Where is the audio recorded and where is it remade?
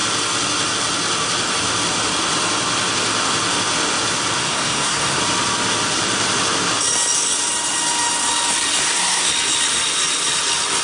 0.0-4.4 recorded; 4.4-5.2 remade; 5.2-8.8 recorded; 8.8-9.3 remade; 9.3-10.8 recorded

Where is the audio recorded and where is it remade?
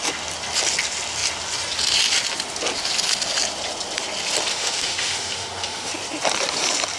0.0-4.5 recorded; 4.5-5.9 remade; 5.9-7.0 recorded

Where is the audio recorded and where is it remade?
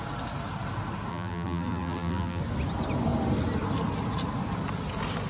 0.0-1.1 recorded; 1.1-2.4 remade; 2.4-5.3 recorded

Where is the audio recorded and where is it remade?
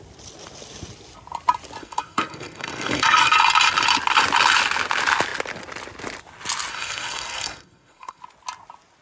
0.0-1.8 recorded; 1.8-3.3 remade; 3.3-6.7 recorded; 6.7-8.2 remade; 8.2-9.0 recorded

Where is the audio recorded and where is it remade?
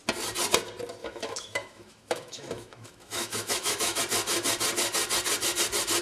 0.0-1.0 recorded; 1.0-4.0 remade; 4.0-6.0 recorded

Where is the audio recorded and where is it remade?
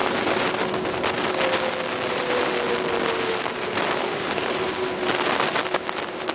0.0-6.3 recorded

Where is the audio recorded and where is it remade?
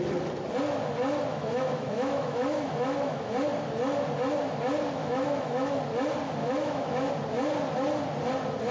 0.0-1.3 recorded; 1.3-3.3 remade; 3.3-5.0 recorded; 5.0-5.8 remade; 5.8-6.4 recorded; 6.4-7.1 remade; 7.1-8.7 recorded